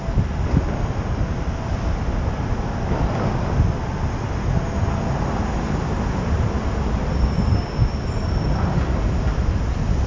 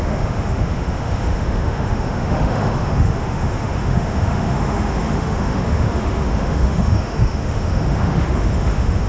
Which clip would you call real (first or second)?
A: first